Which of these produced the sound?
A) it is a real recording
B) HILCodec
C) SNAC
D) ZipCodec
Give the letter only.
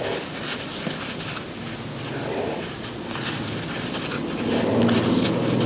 A